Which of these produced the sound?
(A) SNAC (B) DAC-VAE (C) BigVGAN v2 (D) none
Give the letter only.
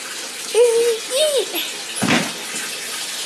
D